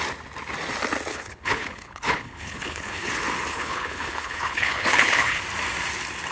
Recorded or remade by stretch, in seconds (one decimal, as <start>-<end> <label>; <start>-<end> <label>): 0.0-1.1 recorded; 1.1-3.1 remade; 3.1-3.5 recorded; 3.5-5.4 remade; 5.4-6.3 recorded